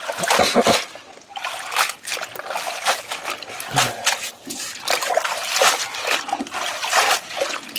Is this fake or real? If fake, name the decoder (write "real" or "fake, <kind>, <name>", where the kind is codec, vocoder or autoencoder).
real